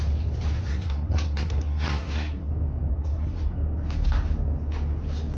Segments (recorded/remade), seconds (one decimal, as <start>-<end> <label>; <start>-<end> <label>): 0.0-0.7 recorded; 0.7-2.5 remade; 2.5-2.9 recorded; 2.9-3.5 remade; 3.5-5.4 recorded